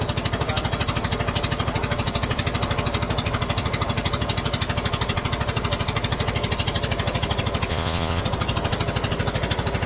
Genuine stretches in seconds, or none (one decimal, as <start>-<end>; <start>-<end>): 0.0-7.7; 8.2-9.9